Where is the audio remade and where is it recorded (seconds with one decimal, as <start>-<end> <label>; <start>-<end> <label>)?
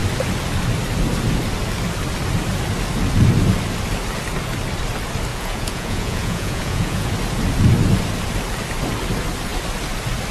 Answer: 0.0-5.3 recorded; 5.3-7.1 remade; 7.1-10.3 recorded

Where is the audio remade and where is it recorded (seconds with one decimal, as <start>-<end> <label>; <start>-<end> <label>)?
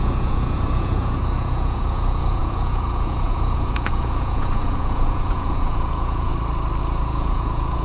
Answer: 0.0-6.3 remade; 6.3-6.8 recorded; 6.8-7.8 remade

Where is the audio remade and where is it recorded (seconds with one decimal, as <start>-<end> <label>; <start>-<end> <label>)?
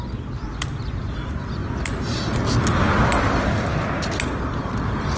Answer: 0.0-5.2 recorded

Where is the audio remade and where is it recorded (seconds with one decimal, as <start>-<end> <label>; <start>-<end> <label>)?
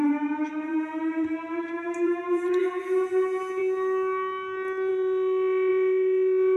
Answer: 0.0-3.6 remade; 3.6-4.9 recorded; 4.9-6.6 remade